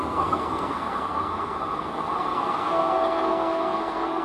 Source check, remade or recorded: remade